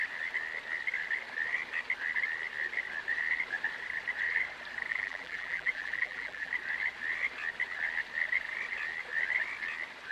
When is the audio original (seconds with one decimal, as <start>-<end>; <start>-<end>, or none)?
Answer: 0.0-4.9; 6.5-10.1